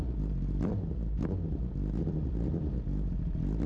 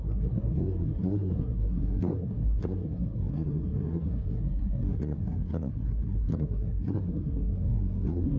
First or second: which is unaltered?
first